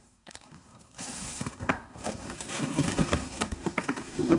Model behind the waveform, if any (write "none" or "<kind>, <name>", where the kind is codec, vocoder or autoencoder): codec, SNAC